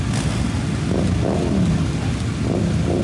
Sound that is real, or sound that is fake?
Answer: real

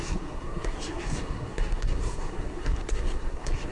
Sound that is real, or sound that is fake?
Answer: fake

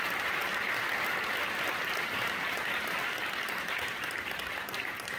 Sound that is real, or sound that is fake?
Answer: real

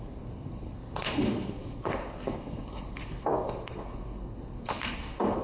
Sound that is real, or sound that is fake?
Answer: fake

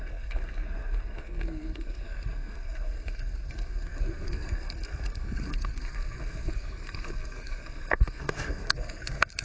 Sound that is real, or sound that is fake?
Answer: fake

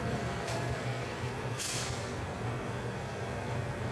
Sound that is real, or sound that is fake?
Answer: fake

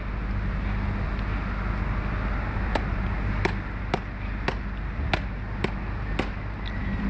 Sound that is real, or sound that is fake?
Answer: real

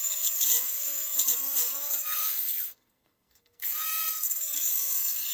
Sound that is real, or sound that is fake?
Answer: fake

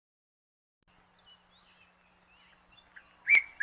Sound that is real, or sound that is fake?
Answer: real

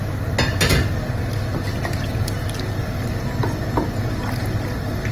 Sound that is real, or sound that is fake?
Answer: real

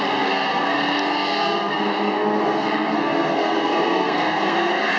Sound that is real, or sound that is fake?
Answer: fake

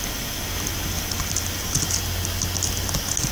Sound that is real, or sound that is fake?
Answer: real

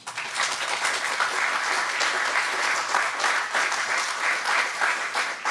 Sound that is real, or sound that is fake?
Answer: real